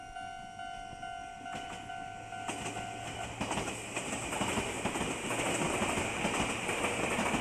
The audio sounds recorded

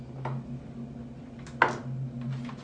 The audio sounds recorded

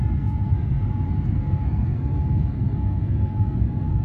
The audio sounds remade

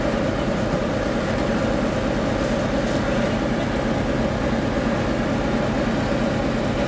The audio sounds recorded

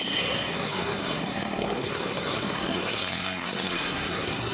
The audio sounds remade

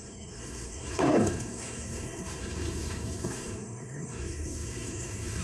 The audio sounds remade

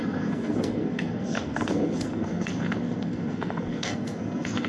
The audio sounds remade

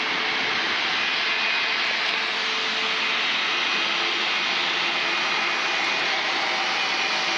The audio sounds recorded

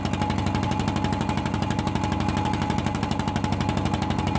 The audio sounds recorded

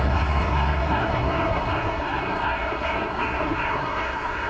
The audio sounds remade